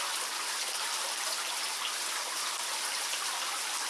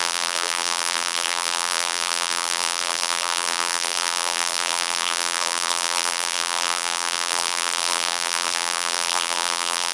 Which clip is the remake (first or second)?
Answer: second